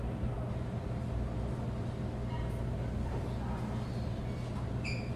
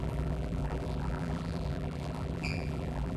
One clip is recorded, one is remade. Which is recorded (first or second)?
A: first